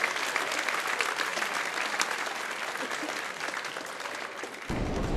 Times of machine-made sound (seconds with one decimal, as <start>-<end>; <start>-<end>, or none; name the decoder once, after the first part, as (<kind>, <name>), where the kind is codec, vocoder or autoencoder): none